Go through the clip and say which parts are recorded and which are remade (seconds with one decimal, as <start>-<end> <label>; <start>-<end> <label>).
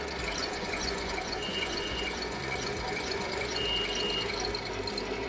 0.0-0.4 recorded; 0.4-3.6 remade; 3.6-5.3 recorded